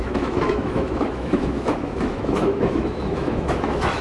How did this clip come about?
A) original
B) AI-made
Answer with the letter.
B